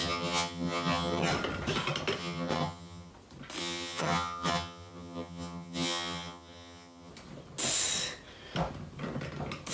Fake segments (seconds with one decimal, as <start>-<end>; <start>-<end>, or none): 0.0-1.3; 2.2-3.1; 3.6-7.1